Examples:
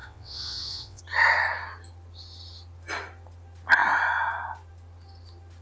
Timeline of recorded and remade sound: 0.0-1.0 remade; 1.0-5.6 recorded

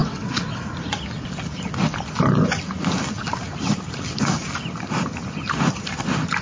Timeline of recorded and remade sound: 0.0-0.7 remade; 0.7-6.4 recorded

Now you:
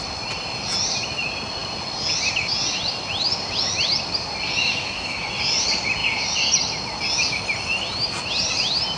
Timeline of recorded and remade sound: 0.0-4.6 recorded; 4.6-5.3 remade; 5.3-9.0 recorded

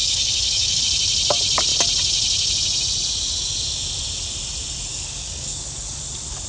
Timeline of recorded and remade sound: 0.0-0.8 remade; 0.8-4.9 recorded; 4.9-6.0 remade; 6.0-6.5 recorded